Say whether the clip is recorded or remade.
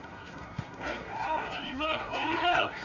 remade